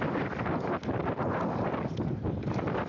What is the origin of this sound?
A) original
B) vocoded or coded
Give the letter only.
A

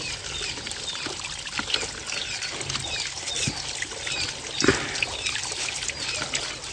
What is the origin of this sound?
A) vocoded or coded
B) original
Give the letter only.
B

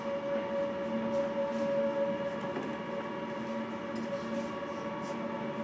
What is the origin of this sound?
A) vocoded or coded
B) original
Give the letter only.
B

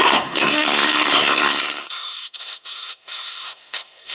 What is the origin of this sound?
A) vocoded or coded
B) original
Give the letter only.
A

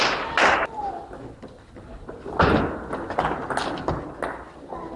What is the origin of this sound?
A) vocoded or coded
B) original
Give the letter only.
B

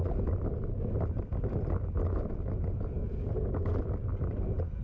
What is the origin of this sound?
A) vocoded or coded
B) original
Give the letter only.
B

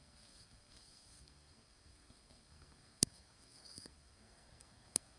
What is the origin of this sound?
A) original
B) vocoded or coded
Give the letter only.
B